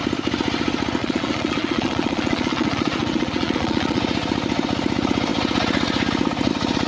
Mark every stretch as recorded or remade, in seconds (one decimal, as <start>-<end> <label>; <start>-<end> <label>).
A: 0.0-1.0 recorded; 1.0-4.0 remade; 4.0-6.9 recorded